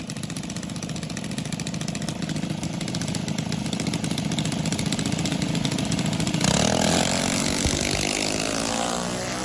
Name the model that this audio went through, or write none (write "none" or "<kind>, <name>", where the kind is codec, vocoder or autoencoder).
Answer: none